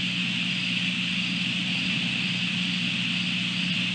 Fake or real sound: real